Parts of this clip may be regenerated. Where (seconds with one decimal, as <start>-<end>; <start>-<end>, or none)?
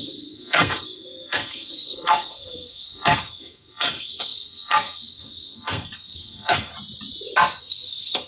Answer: 0.0-6.7; 7.6-8.3